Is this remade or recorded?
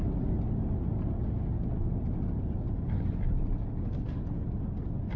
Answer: recorded